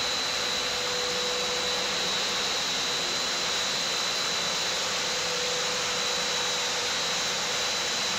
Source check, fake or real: real